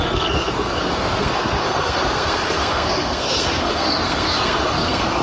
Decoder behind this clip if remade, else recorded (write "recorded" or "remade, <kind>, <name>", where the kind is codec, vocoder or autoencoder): remade, codec, SNAC